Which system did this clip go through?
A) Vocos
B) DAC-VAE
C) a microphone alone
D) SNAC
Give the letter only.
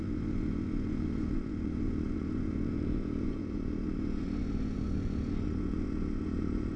A